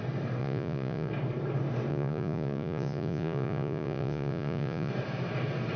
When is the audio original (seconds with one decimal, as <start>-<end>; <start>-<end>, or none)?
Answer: 0.0-0.4; 1.1-1.9; 4.9-5.8